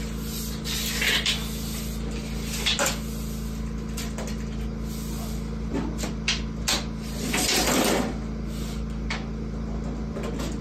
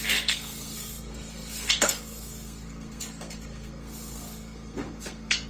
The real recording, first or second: first